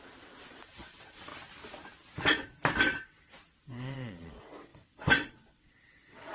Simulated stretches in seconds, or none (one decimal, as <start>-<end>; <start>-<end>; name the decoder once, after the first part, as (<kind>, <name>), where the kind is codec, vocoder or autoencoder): 0.0-1.3 (vocoder, WaveNeXt); 3.6-6.3